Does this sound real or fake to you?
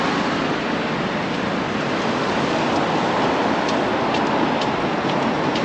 real